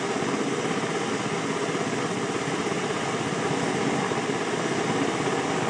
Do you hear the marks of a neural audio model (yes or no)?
no